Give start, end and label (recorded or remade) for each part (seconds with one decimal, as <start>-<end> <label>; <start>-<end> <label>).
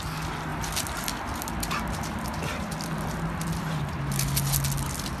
0.0-5.2 recorded